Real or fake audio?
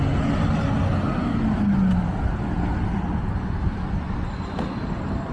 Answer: real